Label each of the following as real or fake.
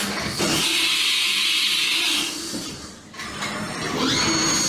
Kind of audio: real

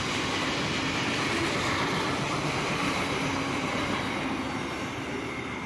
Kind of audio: real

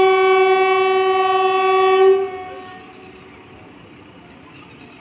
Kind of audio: real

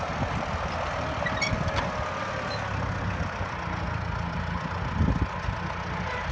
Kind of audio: real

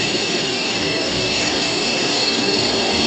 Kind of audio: fake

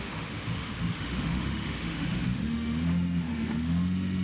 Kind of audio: fake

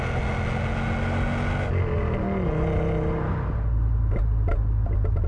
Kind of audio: real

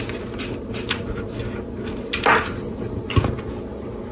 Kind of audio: real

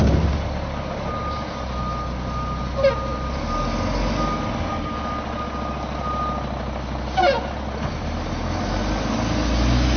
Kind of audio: real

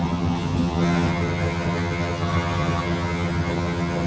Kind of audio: fake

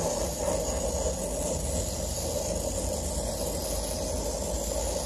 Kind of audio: real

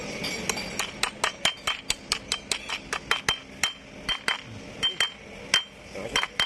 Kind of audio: real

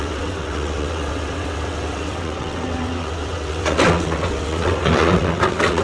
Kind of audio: fake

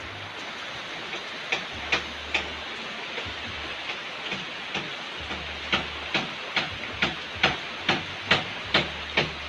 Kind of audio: real